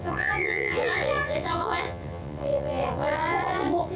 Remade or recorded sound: remade